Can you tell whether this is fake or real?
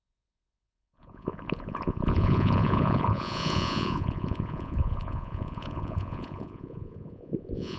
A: fake